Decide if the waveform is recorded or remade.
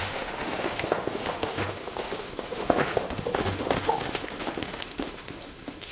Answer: remade